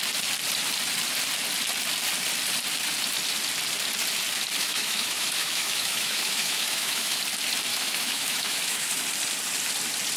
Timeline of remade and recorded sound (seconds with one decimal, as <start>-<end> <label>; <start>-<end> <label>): 0.0-4.6 recorded; 4.6-7.2 remade; 7.2-7.7 recorded; 7.7-8.9 remade; 8.9-10.2 recorded